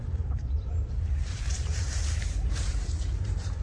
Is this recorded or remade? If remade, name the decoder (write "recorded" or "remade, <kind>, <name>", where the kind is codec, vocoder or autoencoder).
remade, vocoder, BigVGAN v2